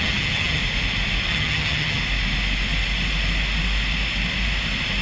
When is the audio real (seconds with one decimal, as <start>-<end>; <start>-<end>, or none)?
0.6-1.3; 2.0-5.0